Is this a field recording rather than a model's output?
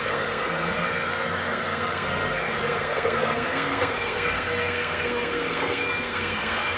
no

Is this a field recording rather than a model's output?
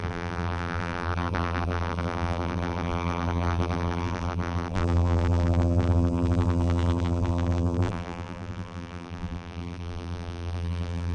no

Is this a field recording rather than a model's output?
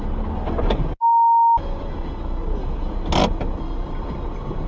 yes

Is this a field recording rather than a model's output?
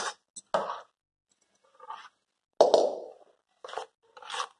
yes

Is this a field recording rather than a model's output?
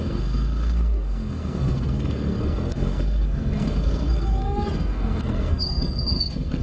no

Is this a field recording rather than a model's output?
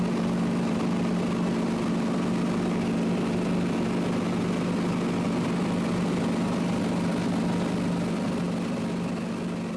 yes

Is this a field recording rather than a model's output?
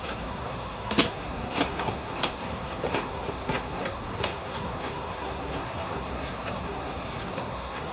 no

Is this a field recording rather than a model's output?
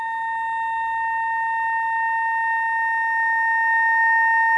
yes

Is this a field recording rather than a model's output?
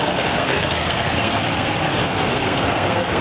no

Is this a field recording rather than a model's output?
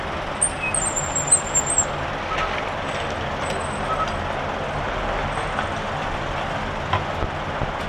yes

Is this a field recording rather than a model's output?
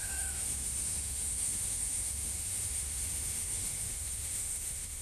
no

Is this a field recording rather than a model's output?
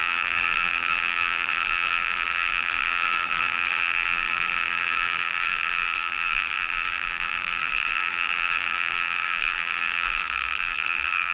no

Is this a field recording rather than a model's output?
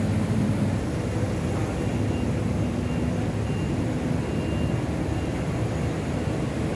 yes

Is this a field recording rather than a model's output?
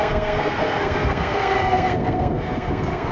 no